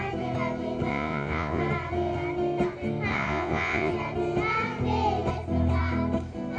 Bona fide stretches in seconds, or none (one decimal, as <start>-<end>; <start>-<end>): 0.0-0.9; 1.6-3.1; 3.9-6.6